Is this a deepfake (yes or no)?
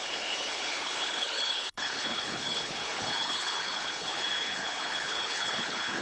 yes